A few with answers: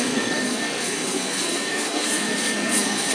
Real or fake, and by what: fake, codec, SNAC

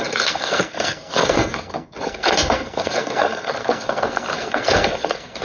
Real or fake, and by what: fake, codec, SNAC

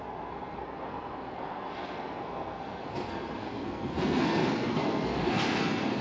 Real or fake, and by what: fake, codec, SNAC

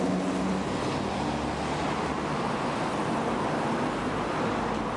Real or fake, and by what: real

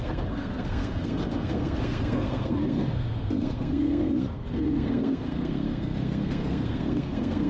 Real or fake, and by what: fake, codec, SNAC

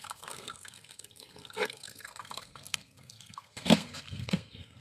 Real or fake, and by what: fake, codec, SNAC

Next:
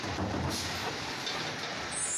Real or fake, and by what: real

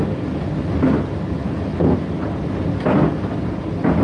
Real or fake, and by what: real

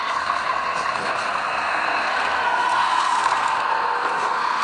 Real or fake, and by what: fake, codec, SNAC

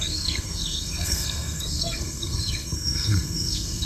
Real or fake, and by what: fake, codec, SNAC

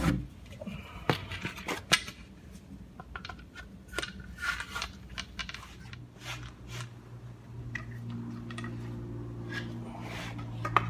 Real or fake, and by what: real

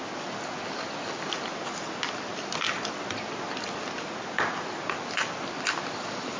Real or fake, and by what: real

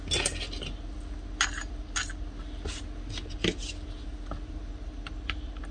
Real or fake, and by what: real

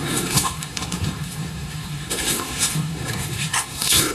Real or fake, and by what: fake, codec, SNAC